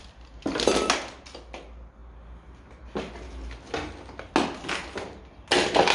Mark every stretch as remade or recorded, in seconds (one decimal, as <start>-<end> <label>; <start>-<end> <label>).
0.0-5.9 recorded